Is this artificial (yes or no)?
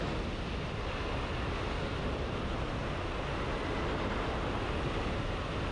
no